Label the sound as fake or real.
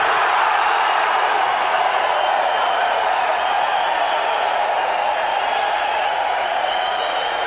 fake